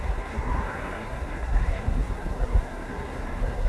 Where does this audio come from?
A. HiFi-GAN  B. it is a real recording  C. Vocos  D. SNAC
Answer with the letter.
D